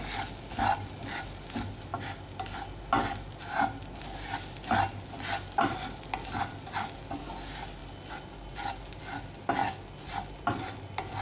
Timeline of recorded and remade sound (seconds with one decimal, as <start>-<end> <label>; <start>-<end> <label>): 0.0-11.2 recorded